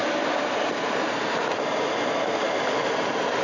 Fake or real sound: real